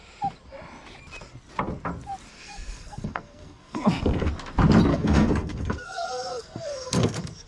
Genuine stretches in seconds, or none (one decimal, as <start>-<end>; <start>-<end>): 0.0-2.3; 4.3-4.9